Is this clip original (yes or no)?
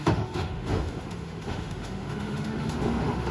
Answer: no